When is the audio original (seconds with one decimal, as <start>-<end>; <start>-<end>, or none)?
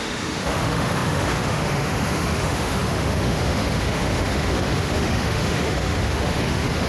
none